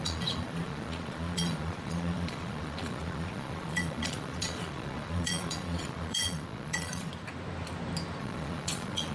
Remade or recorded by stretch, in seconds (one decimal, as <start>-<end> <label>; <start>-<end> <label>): 0.0-7.1 remade; 7.1-8.2 recorded; 8.2-9.1 remade